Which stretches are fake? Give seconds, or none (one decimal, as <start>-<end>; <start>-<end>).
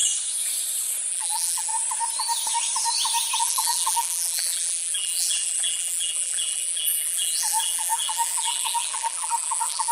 1.1-1.7; 3.4-9.9